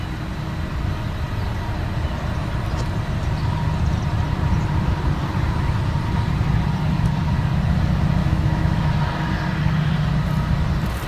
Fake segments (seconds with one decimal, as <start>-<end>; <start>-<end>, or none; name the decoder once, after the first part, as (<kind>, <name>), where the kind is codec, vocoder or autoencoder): 8.2-8.9 (autoencoder, DAC-VAE)

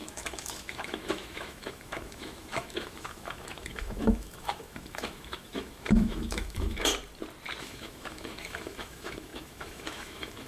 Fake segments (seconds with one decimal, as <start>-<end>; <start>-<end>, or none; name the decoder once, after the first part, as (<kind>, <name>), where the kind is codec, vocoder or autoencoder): 0.0-6.9 (autoencoder, DAC-VAE); 7.6-10.5

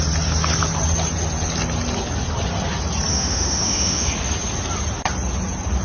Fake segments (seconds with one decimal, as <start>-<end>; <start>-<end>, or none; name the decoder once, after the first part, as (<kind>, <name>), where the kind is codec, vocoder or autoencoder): 3.1-4.1 (autoencoder, DAC-VAE)

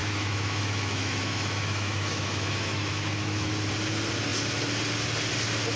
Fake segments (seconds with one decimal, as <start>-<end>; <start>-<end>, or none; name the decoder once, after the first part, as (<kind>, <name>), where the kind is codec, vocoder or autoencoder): 0.0-3.5 (autoencoder, DAC-VAE)

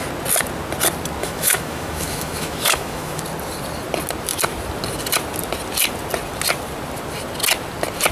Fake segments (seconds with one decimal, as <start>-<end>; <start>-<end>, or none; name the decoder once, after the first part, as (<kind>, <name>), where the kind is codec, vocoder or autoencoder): 1.2-3.2 (autoencoder, DAC-VAE)

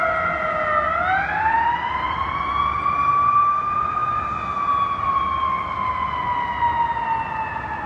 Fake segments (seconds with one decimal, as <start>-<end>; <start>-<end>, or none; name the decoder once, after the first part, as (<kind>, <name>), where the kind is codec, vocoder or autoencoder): none

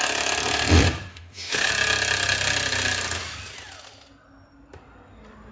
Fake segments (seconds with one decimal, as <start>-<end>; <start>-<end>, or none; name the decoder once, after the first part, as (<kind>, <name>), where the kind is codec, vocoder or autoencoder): 1.1-1.7 (autoencoder, DAC-VAE)